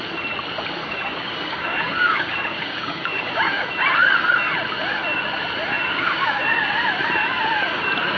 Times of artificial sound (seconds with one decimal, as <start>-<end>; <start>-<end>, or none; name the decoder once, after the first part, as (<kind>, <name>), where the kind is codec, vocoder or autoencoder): 0.8-3.6 (codec, DAC); 5.9-6.4